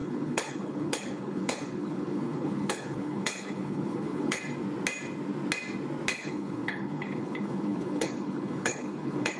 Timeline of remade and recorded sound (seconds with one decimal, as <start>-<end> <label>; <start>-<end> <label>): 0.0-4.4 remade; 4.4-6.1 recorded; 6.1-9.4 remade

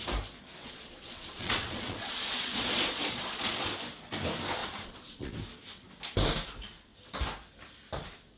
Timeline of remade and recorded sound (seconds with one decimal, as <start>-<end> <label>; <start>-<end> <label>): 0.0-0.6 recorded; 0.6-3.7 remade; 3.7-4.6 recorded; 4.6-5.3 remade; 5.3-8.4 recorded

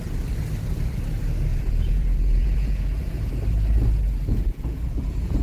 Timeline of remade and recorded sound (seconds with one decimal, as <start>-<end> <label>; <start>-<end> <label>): 0.0-1.5 recorded; 1.5-3.3 remade; 3.3-4.3 recorded; 4.3-5.4 remade

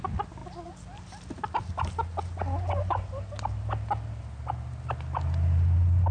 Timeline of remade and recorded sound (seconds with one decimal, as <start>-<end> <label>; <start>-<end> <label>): 0.0-6.1 recorded

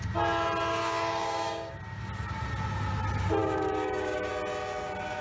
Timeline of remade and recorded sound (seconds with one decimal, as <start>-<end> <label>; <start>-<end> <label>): 0.0-0.7 recorded; 0.7-1.8 remade; 1.8-3.4 recorded; 3.4-4.3 remade; 4.3-5.2 recorded

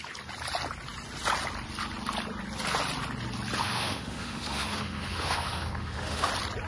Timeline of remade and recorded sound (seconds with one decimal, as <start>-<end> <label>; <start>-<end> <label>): 0.0-3.6 recorded; 3.6-6.3 remade; 6.3-6.7 recorded

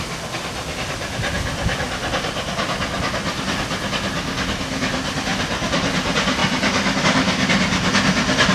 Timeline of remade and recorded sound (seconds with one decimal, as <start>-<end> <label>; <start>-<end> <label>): 0.0-5.3 recorded; 5.3-5.9 remade; 5.9-8.5 recorded

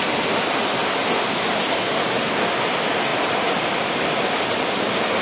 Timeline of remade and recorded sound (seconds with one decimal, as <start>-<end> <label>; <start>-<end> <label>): 0.0-5.2 recorded